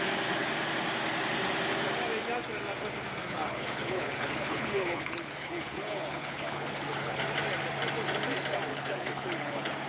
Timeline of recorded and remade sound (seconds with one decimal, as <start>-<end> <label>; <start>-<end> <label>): 0.0-3.2 recorded; 3.2-7.2 remade; 7.2-8.7 recorded; 8.7-9.9 remade